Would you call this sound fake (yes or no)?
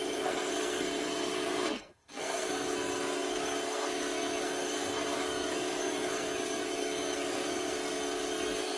yes